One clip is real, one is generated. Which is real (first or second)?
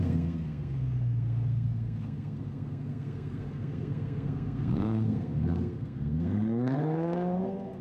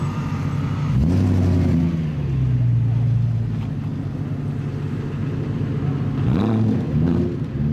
second